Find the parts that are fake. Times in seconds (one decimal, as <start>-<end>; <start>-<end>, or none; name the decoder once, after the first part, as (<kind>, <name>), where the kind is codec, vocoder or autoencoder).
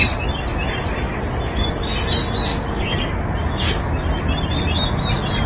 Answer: none